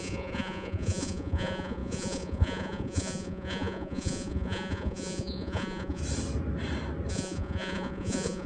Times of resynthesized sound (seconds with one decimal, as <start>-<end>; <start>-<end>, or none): 0.0-6.0; 7.1-8.5